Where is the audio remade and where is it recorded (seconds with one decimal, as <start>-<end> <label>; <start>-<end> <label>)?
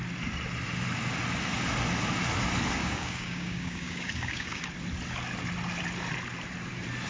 0.0-2.8 recorded; 2.8-4.7 remade; 4.7-7.1 recorded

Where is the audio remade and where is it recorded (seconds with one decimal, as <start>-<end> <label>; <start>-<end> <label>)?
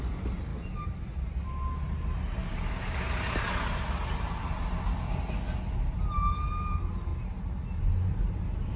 0.0-2.4 recorded; 2.4-3.1 remade; 3.1-8.8 recorded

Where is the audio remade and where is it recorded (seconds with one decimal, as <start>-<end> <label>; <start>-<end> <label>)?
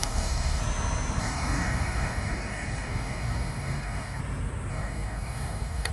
0.0-0.6 remade; 0.6-1.2 recorded; 1.2-4.2 remade; 4.2-4.7 recorded; 4.7-5.9 remade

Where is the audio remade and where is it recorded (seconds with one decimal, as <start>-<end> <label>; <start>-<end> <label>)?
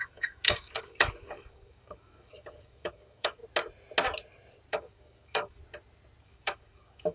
0.0-3.4 remade; 3.4-4.7 recorded; 4.7-5.6 remade; 5.6-6.2 recorded; 6.2-7.1 remade